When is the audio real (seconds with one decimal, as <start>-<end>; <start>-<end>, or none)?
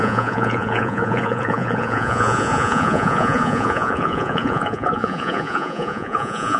none